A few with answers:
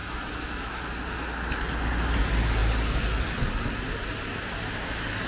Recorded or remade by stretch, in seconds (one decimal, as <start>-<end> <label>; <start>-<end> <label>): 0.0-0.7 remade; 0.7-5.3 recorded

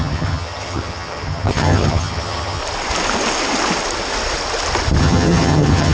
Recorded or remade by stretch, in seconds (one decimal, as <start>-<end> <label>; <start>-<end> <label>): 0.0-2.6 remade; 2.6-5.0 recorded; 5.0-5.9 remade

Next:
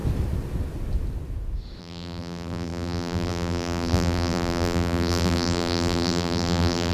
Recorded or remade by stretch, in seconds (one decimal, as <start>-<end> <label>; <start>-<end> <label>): 0.0-1.8 recorded; 1.8-6.9 remade